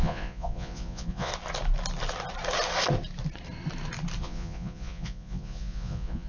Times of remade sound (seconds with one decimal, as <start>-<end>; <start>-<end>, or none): 0.0-1.3; 4.2-6.3

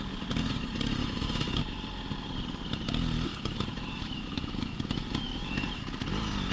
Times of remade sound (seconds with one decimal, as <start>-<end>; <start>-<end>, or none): 1.0-1.6; 3.3-5.8